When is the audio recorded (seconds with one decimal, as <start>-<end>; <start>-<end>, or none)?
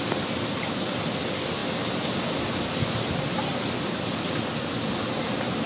0.0-5.7